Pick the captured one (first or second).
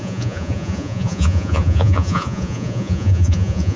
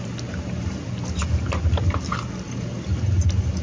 second